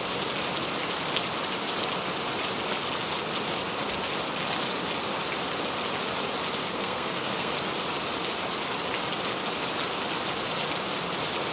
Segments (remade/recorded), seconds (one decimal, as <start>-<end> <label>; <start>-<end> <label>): 0.0-6.6 recorded; 6.6-7.5 remade; 7.5-11.5 recorded